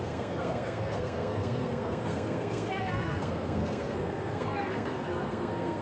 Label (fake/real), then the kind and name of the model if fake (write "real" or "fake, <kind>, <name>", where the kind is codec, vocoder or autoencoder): fake, codec, SNAC